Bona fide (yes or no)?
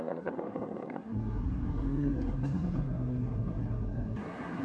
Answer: no